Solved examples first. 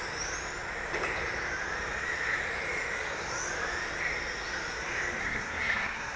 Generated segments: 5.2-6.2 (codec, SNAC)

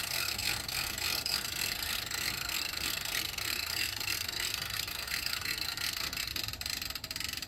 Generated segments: 0.0-6.3 (codec, SNAC)

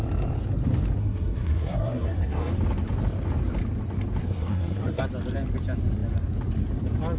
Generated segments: 1.0-2.5 (codec, SNAC); 4.2-5.0

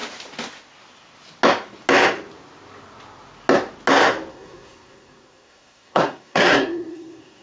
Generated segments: 4.3-7.4 (codec, SNAC)

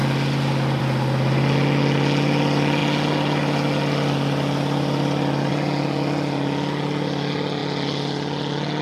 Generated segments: none

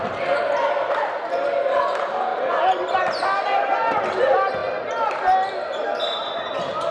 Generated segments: none

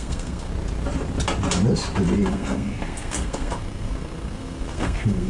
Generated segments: 0.0-0.5 (codec, SNAC); 2.3-5.3